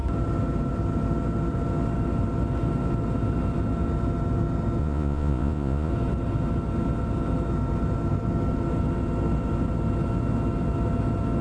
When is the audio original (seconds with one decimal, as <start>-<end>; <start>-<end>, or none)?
0.0-4.8; 5.9-11.4